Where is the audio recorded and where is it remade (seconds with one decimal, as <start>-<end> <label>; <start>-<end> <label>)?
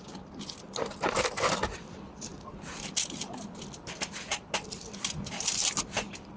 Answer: 0.0-6.4 recorded